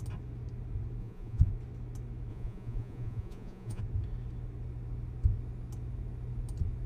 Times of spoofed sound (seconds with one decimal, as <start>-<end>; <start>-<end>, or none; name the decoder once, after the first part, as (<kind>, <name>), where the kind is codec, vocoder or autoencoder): 1.0-1.5 (vocoder, Vocos); 2.3-3.8